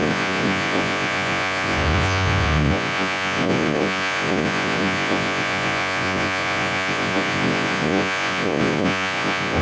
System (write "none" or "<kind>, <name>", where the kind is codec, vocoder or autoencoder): vocoder, Vocos